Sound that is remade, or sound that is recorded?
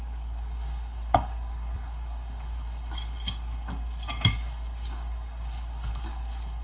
remade